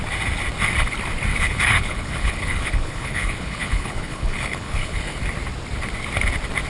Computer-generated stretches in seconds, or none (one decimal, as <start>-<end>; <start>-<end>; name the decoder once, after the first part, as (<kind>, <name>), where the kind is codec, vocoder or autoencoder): 1.3-5.2 (codec, HILCodec)